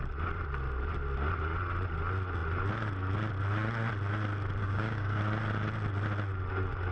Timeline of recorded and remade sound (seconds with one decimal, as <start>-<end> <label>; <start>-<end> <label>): 0.0-4.6 recorded; 4.6-5.2 remade; 5.2-6.9 recorded

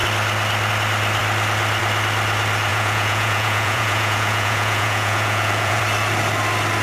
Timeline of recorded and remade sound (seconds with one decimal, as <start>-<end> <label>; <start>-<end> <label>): 0.0-2.7 recorded; 2.7-5.8 remade; 5.8-6.8 recorded

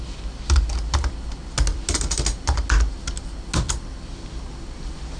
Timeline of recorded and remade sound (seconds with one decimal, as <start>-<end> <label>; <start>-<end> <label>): 0.0-5.2 recorded

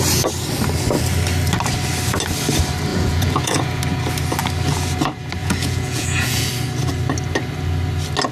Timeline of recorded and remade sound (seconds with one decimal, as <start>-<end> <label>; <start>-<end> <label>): 0.0-2.9 recorded; 2.9-3.8 remade; 3.8-5.4 recorded; 5.4-6.5 remade; 6.5-8.3 recorded

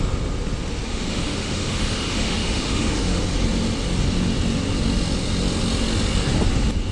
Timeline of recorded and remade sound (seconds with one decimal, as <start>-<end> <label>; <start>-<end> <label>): 0.0-0.9 recorded; 0.9-3.2 remade; 3.2-6.9 recorded

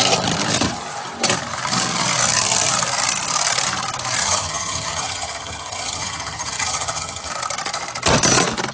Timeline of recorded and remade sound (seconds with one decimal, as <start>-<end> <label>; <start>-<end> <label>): 0.0-4.2 recorded; 4.2-7.3 remade; 7.3-8.7 recorded

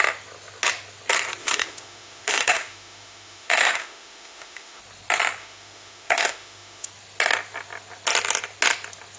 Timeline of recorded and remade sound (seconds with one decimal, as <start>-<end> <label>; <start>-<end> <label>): 0.0-1.4 recorded; 1.4-4.8 remade; 4.8-5.4 recorded; 5.4-6.9 remade; 6.9-9.2 recorded